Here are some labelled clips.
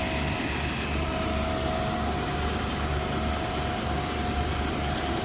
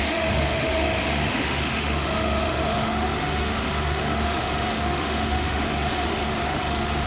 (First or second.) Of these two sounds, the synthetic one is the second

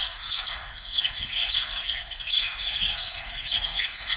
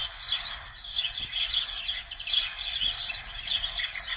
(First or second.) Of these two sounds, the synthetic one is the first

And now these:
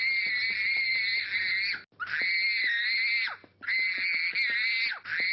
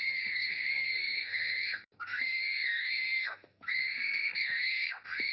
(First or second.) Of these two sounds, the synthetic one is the second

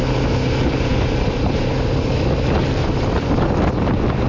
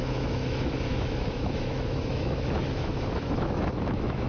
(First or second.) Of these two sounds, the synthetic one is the second